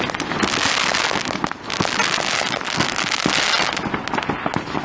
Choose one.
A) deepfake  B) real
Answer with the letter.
B